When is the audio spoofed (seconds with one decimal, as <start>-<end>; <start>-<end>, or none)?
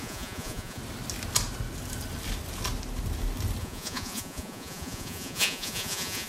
0.0-0.8; 3.6-6.3